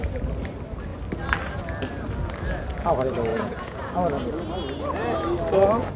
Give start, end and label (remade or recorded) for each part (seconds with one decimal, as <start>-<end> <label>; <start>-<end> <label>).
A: 0.0-3.3 recorded; 3.3-3.9 remade; 3.9-6.0 recorded